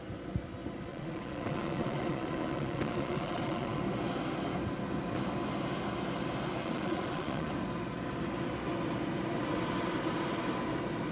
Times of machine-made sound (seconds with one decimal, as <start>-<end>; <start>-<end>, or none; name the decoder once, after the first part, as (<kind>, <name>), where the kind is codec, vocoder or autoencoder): 0.9-3.8 (vocoder, Vocos); 6.6-7.5